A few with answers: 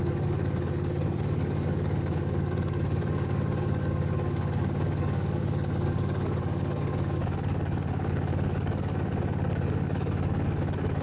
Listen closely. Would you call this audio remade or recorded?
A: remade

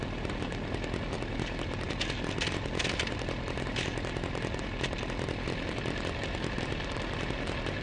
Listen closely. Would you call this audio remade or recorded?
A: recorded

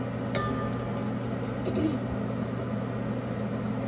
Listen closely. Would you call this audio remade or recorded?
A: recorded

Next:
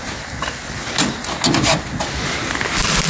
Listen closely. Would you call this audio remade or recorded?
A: recorded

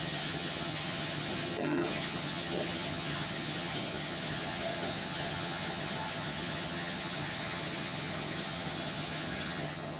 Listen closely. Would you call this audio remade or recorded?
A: remade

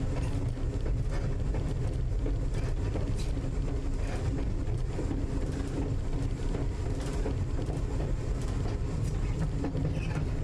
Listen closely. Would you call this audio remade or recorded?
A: recorded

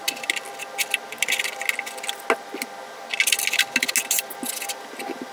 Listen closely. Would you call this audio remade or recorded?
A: recorded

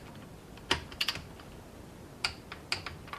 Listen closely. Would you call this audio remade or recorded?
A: recorded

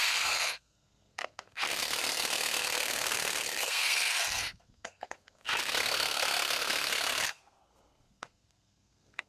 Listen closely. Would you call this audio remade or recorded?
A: remade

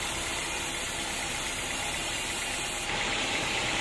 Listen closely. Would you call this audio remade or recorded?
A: recorded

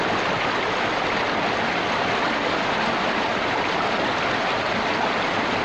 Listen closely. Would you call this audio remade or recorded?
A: recorded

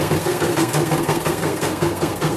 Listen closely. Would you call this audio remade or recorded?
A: remade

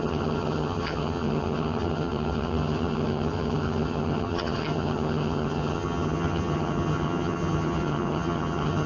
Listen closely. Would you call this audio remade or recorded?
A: remade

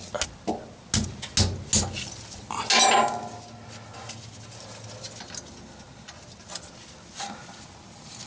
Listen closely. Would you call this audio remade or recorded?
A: recorded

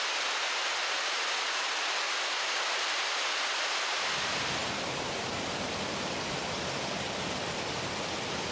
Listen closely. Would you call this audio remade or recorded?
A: recorded